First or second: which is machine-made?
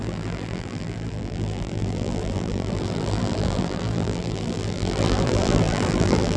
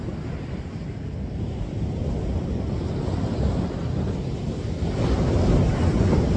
first